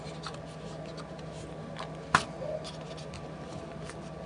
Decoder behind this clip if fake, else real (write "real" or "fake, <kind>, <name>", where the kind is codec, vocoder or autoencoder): real